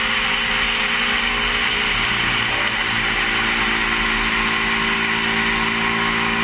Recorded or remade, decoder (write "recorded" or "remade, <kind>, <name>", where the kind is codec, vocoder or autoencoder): recorded